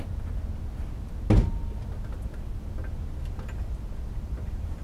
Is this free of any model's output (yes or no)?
yes